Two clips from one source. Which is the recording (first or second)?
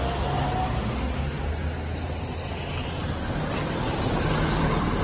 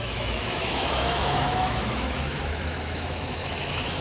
first